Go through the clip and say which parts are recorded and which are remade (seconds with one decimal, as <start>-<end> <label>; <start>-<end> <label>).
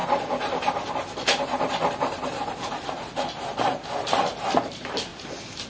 0.0-5.7 recorded